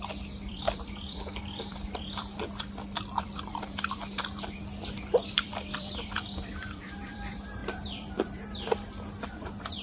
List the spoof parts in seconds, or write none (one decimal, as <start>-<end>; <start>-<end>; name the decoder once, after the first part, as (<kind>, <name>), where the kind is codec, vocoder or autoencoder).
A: 0.0-9.8 (vocoder, BigVGAN v2)